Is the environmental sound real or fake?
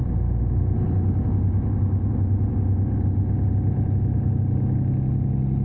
real